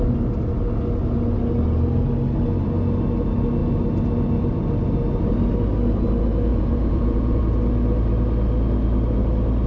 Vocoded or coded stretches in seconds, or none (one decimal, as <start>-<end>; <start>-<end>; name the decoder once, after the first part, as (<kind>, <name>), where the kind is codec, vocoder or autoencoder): 6.5-7.4 (vocoder, Vocos)